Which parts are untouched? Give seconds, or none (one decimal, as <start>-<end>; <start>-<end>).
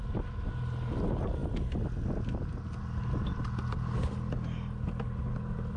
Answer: 0.0-5.8